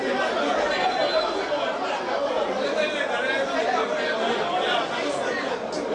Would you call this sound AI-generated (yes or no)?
no